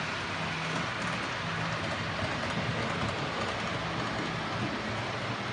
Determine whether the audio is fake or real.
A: real